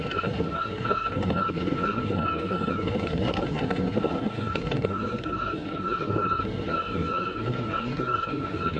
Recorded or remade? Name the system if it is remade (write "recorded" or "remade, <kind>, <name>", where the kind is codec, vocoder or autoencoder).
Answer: remade, codec, SNAC